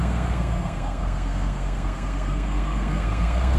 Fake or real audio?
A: fake